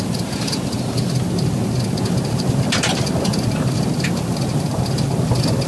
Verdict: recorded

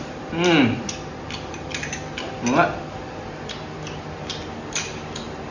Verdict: recorded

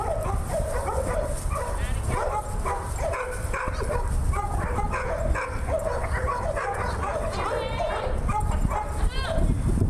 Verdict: recorded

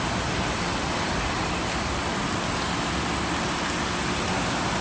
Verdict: recorded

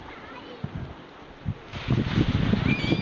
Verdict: recorded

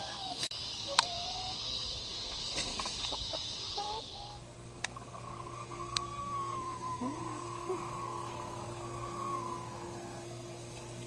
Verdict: remade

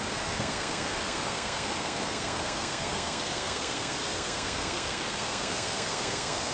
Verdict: remade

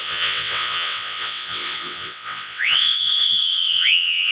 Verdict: remade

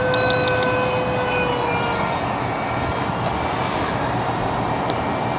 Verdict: recorded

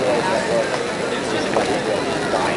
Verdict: recorded